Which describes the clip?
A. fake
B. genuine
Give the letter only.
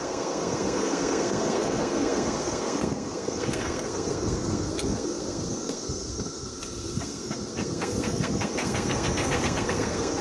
A